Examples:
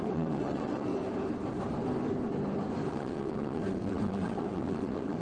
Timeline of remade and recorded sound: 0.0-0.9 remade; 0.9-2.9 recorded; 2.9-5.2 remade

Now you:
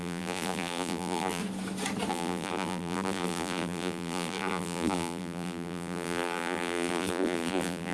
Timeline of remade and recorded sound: 0.0-1.4 remade; 1.4-2.1 recorded; 2.1-7.9 remade

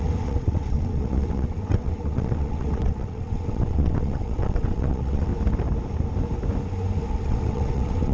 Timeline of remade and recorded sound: 0.0-5.3 remade; 5.3-7.1 recorded; 7.1-8.1 remade

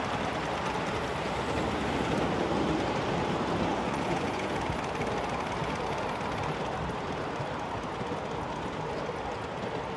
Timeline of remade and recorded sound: 0.0-3.7 recorded; 3.7-4.5 remade; 4.5-10.0 recorded

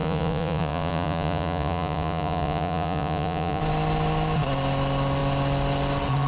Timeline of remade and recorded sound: 0.0-3.6 remade; 3.6-6.3 recorded